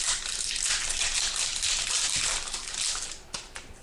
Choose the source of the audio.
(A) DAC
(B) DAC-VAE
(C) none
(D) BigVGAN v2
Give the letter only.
C